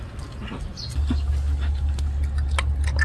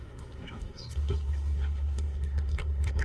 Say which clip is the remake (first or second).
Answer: second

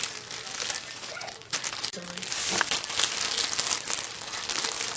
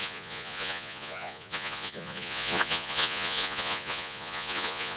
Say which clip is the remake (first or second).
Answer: second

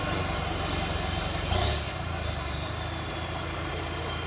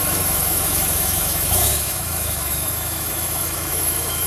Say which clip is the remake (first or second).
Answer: second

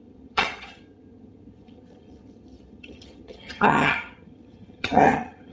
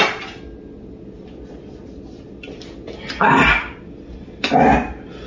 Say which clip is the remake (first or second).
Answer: first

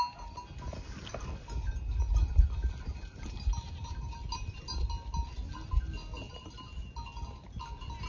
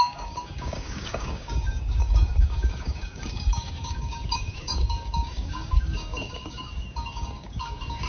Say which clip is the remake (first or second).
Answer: second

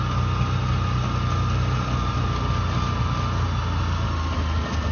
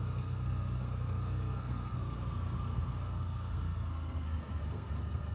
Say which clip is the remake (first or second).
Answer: second